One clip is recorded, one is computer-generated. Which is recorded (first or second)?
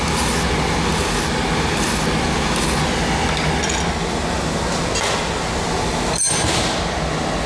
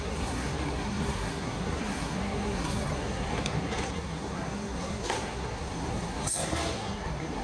first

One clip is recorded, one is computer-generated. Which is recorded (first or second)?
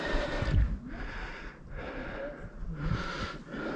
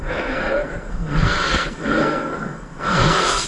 first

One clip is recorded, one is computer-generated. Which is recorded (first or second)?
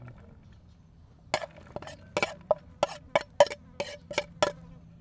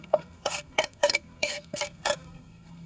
first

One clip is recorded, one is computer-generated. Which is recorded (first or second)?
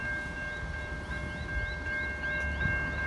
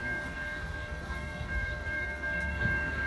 first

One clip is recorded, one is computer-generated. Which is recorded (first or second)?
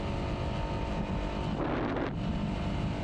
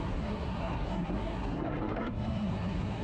first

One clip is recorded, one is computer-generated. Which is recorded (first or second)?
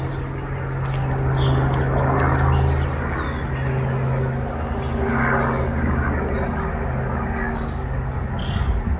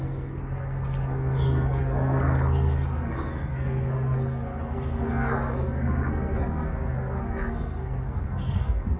first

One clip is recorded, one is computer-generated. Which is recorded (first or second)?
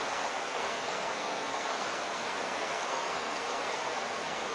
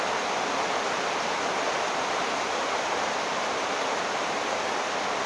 second